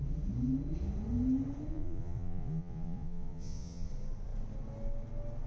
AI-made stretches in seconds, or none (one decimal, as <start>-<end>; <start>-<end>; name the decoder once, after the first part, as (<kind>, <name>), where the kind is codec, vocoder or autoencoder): 1.7-3.9 (vocoder, Vocos)